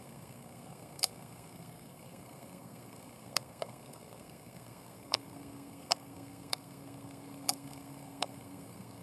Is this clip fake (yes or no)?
yes